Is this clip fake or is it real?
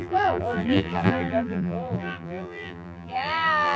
fake